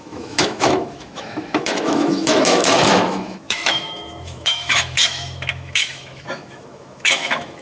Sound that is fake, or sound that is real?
fake